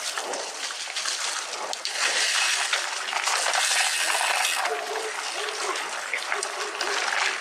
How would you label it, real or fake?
real